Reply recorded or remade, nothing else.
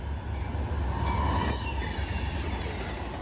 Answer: recorded